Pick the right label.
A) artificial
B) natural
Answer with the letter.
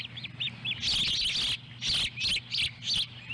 B